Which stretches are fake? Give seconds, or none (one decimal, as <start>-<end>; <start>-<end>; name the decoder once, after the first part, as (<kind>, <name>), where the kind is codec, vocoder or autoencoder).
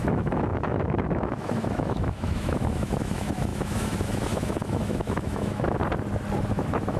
0.0-5.8 (autoencoder, DAC-VAE); 6.5-7.0